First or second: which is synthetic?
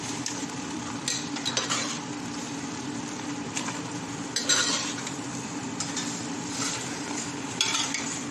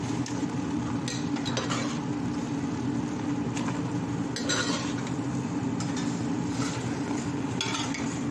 first